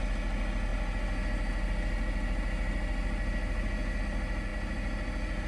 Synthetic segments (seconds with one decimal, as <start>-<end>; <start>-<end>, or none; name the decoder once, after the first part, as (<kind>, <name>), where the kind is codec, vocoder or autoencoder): none